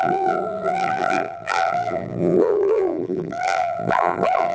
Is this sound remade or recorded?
remade